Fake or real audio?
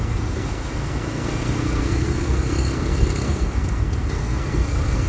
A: fake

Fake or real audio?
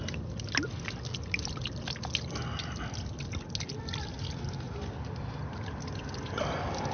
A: real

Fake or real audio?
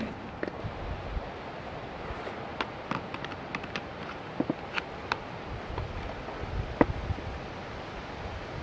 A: real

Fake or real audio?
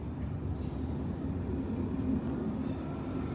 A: real